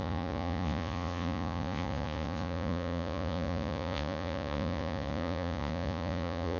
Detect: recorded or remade remade